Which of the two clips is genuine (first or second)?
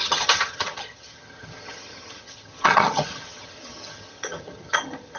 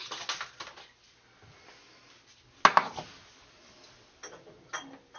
second